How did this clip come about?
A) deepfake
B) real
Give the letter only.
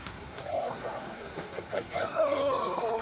A